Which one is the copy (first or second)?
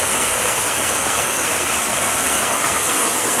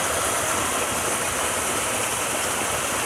first